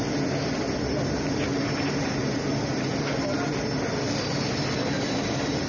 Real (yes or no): yes